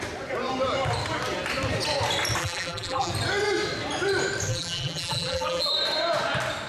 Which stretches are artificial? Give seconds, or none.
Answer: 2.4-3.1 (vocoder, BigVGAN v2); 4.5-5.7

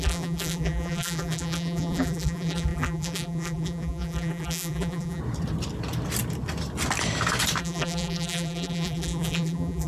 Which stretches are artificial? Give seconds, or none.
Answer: 0.0-5.2 (vocoder, BigVGAN v2); 7.6-9.9

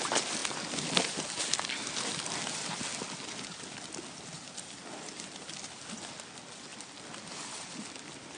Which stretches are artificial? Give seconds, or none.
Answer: 0.4-1.4 (vocoder, BigVGAN v2); 6.7-7.2

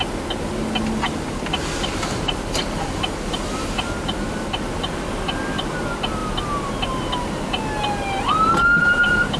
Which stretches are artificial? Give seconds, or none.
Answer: 6.2-7.5 (vocoder, BigVGAN v2)

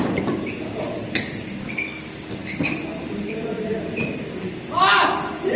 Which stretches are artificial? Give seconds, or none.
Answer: none

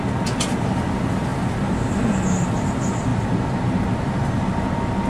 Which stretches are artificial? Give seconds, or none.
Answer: 3.1-4.3 (vocoder, BigVGAN v2)